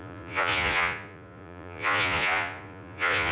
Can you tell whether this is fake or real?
fake